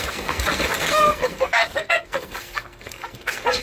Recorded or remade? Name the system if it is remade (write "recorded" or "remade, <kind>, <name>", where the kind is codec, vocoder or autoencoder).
remade, codec, SNAC